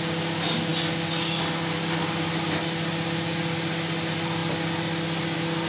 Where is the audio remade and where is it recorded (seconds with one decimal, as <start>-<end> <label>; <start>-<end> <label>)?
0.0-5.7 recorded